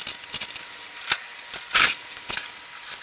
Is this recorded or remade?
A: recorded